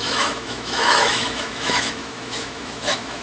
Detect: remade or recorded remade